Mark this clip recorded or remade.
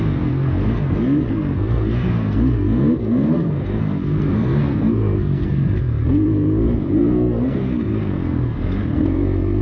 remade